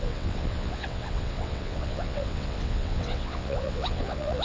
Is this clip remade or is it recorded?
remade